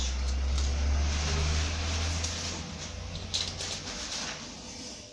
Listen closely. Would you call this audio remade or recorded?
recorded